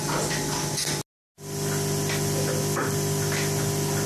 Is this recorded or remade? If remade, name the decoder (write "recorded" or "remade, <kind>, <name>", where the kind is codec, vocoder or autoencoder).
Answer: recorded